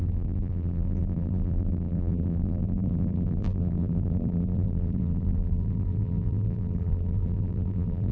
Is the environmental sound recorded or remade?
remade